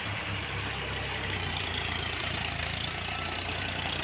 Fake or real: fake